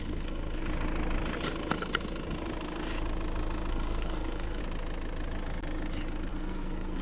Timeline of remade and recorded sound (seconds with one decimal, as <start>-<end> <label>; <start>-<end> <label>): 0.0-0.6 remade; 0.6-3.7 recorded; 3.7-4.6 remade; 4.6-6.3 recorded; 6.3-7.0 remade